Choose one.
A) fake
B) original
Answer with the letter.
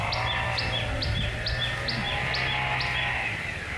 B